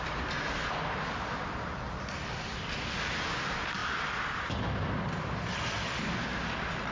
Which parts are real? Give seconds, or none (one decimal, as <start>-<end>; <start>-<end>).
0.0-6.9